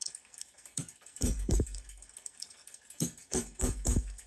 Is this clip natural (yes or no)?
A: no